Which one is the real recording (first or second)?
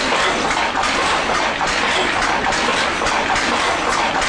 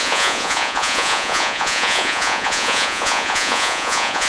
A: first